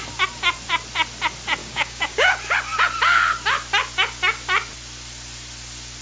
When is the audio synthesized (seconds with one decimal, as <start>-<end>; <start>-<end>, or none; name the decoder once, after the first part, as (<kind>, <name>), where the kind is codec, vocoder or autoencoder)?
1.6-2.3 (codec, DAC)